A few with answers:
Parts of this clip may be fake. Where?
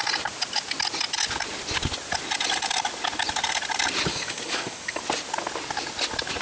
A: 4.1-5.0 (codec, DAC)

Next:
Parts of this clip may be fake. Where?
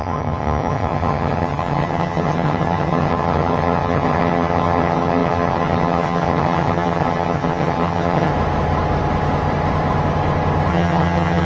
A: 0.0-8.3 (vocoder, HiFi-GAN); 10.7-11.4